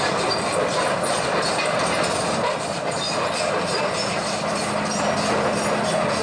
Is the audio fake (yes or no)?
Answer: no